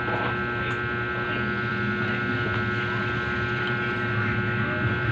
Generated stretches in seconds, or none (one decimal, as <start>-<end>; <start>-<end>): none